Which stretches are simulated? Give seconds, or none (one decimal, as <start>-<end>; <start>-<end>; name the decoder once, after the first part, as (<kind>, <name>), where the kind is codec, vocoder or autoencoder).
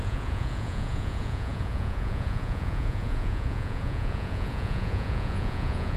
0.0-6.0 (vocoder, Vocos)